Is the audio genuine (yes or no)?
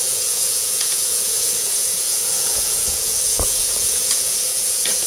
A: no